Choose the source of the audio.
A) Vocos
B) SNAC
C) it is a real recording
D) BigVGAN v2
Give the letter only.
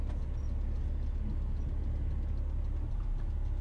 C